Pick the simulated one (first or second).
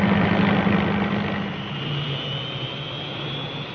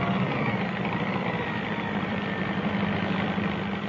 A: second